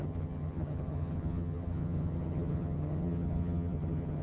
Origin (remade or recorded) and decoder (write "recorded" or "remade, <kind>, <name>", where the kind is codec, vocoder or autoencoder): remade, vocoder, HiFi-GAN